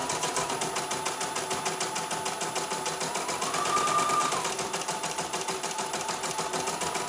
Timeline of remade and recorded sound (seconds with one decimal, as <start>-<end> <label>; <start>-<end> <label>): 0.0-0.5 remade; 0.5-4.2 recorded; 4.2-6.6 remade; 6.6-7.1 recorded